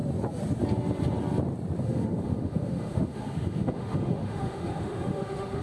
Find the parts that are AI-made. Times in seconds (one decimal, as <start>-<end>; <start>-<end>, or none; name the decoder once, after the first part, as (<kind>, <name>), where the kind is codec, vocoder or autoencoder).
1.8-5.6 (autoencoder, DAC-VAE)

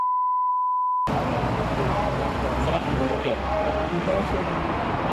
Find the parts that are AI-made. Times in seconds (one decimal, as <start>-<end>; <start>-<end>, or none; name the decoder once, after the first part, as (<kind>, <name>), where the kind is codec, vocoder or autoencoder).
0.0-0.5 (autoencoder, DAC-VAE); 2.7-4.3

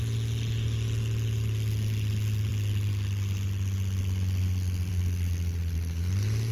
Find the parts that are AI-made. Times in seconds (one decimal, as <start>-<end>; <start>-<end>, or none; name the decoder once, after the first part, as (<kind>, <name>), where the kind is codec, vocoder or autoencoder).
none